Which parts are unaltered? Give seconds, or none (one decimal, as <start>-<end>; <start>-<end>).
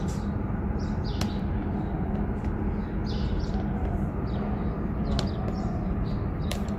1.1-5.2